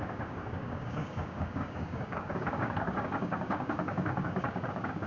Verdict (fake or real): fake